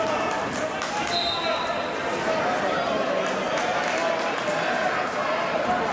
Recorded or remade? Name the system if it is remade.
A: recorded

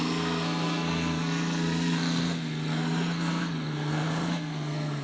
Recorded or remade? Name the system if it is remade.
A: remade, codec, SNAC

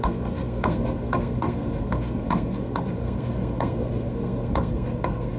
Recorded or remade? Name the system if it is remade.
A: remade, codec, SNAC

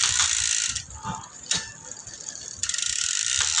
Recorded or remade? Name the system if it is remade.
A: recorded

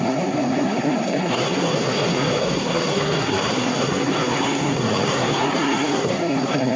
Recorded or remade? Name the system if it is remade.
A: remade, codec, SNAC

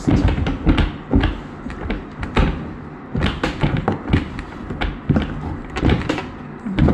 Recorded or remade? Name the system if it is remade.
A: recorded